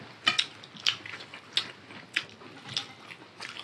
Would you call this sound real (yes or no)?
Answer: yes